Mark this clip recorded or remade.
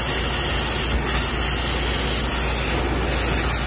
recorded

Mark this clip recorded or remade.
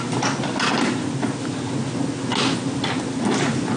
recorded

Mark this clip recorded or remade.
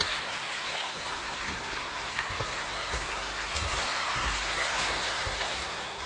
remade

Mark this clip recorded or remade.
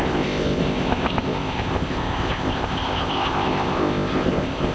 remade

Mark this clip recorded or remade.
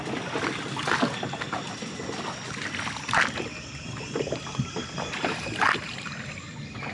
recorded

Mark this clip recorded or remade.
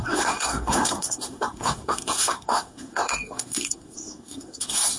remade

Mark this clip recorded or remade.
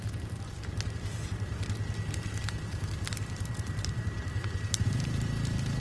remade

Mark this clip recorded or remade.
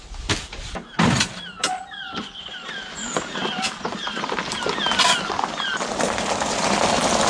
recorded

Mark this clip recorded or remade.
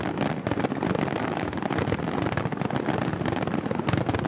recorded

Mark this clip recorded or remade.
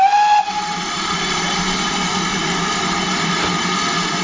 recorded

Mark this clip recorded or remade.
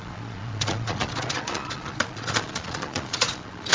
remade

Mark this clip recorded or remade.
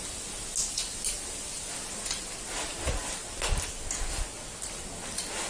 recorded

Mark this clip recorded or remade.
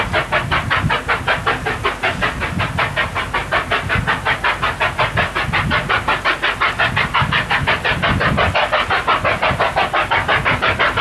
recorded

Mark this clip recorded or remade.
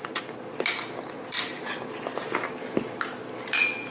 recorded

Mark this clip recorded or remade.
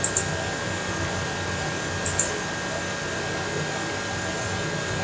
recorded